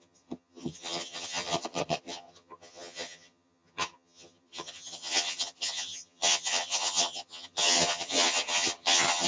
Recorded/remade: remade